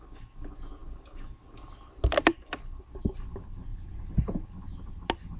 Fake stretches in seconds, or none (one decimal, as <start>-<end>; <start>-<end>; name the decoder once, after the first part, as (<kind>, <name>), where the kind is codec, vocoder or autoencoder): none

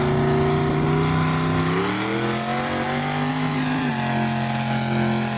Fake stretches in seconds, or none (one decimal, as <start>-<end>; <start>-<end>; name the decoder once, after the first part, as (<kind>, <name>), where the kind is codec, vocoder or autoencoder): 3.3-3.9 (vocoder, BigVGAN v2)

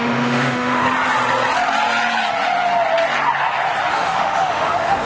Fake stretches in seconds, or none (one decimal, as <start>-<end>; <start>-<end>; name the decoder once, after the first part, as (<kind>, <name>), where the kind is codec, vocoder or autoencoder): 0.0-0.8 (autoencoder, DAC-VAE); 3.9-5.1

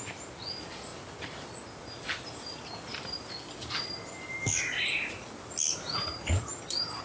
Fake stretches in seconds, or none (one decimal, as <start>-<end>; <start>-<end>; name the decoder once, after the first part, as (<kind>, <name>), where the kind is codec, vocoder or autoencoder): none

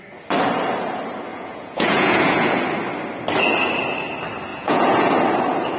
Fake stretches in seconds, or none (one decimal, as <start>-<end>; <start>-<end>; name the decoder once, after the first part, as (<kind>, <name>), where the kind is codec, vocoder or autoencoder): 1.3-2.6 (vocoder, Vocos); 4.5-5.1

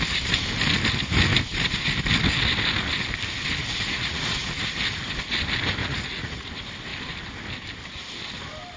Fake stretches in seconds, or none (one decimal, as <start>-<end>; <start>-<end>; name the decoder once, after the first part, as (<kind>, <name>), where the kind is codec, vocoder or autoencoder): 3.6-4.7 (vocoder, Vocos); 5.8-6.5